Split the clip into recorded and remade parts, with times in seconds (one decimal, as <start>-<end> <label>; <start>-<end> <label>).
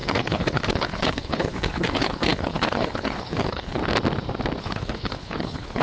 0.0-3.8 remade; 3.8-4.6 recorded; 4.6-5.8 remade